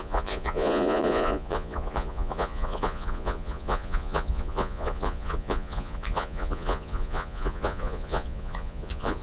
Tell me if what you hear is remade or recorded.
remade